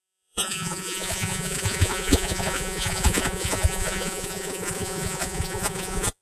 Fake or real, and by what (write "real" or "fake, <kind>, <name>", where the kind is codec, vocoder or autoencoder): fake, vocoder, Vocos